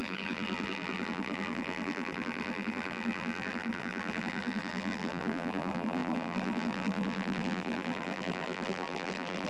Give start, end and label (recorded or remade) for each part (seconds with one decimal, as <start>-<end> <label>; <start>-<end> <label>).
0.0-9.5 remade